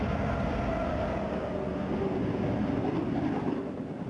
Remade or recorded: recorded